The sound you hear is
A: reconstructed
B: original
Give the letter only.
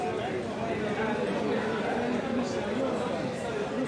B